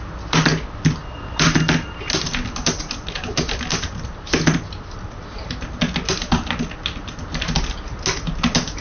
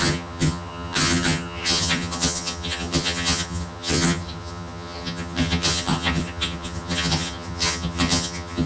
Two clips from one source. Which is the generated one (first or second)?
second